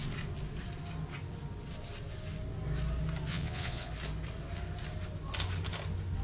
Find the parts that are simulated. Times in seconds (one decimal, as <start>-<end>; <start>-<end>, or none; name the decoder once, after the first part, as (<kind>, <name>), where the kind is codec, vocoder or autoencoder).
3.3-3.9 (vocoder, Vocos)